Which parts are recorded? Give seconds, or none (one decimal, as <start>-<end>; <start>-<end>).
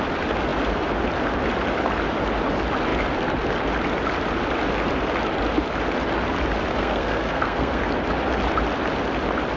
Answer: 0.0-6.7; 7.8-9.6